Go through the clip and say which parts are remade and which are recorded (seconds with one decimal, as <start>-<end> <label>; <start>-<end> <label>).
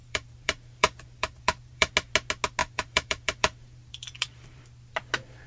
0.0-1.9 remade; 1.9-2.6 recorded; 2.6-4.6 remade; 4.6-5.5 recorded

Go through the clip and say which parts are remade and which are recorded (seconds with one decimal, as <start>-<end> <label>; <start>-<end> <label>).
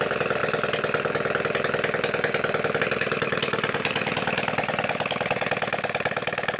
0.0-0.4 remade; 0.4-2.8 recorded; 2.8-6.6 remade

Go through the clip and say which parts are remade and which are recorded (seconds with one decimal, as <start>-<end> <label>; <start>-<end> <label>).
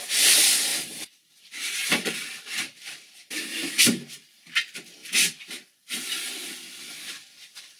0.0-0.7 recorded; 0.7-3.3 remade; 3.3-5.0 recorded; 5.0-6.0 remade; 6.0-7.8 recorded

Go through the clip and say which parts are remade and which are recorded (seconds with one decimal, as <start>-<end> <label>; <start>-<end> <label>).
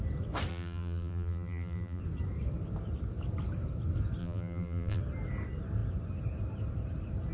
0.0-0.5 recorded; 0.5-2.0 remade; 2.0-4.2 recorded; 4.2-5.0 remade; 5.0-7.3 recorded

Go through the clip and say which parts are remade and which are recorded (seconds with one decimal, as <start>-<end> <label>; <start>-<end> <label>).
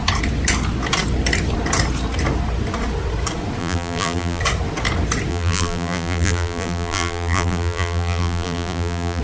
0.0-3.6 recorded; 3.6-4.4 remade; 4.4-5.3 recorded; 5.3-9.2 remade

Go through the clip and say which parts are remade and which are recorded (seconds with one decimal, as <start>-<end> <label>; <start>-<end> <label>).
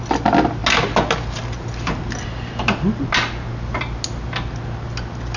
0.0-5.4 recorded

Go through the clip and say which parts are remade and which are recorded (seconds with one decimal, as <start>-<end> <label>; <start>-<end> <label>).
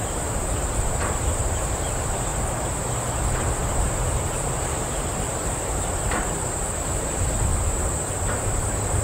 0.0-2.3 remade; 2.3-3.1 recorded; 3.1-3.6 remade; 3.6-5.3 recorded; 5.3-7.5 remade; 7.5-8.5 recorded; 8.5-9.0 remade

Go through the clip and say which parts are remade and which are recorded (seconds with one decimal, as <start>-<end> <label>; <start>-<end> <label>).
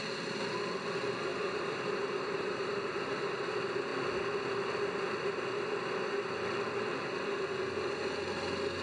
0.0-1.3 recorded; 1.3-3.0 remade; 3.0-8.8 recorded